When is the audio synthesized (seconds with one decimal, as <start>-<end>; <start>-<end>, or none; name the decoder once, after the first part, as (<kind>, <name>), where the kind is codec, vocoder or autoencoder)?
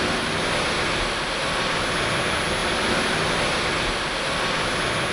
none